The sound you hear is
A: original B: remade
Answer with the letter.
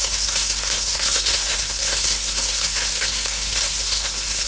B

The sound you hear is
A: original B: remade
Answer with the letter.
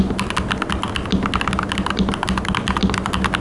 A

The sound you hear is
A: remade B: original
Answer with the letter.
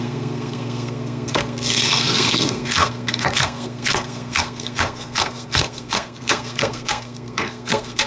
A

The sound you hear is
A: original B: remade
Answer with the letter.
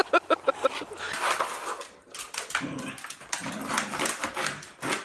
A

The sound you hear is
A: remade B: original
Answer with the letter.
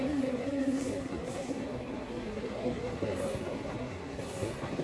A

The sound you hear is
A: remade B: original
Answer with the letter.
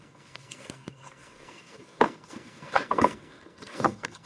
A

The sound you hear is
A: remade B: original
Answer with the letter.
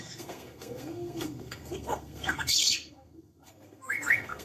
A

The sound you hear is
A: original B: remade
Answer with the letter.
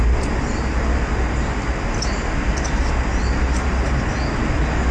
A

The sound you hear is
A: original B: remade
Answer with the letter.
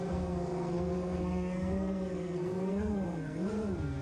B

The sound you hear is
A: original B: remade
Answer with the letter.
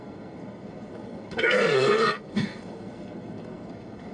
B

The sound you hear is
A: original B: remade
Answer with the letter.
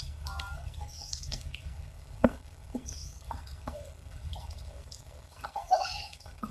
B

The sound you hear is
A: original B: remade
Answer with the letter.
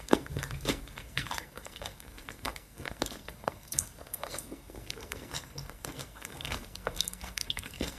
B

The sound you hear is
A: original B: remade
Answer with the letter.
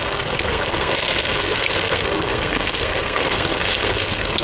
B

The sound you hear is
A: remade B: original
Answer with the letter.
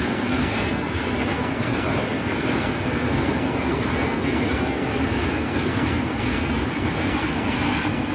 A